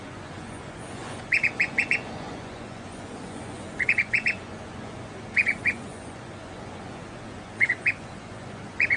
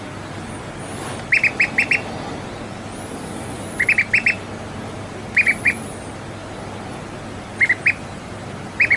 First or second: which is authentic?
second